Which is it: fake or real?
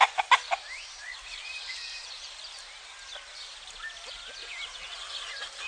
real